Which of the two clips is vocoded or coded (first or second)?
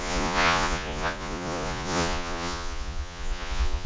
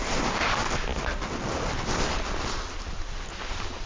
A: first